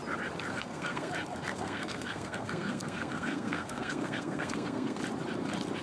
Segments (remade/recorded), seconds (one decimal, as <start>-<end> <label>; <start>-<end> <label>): 0.0-0.5 recorded; 0.5-1.1 remade; 1.1-1.5 recorded; 1.5-5.0 remade; 5.0-5.8 recorded